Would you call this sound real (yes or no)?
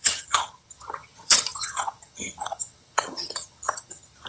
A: no